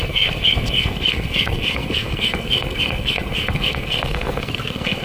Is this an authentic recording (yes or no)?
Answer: no